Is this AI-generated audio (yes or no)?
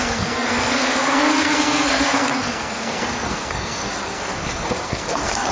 yes